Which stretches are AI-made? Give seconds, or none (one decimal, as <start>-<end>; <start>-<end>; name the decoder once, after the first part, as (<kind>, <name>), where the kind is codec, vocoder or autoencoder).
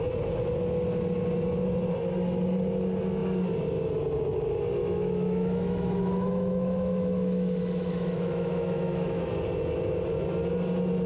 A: 4.8-9.3 (autoencoder, DAC-VAE)